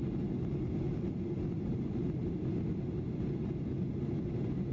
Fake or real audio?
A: real